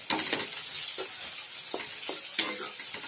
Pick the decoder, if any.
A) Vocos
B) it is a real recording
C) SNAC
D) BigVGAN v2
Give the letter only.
B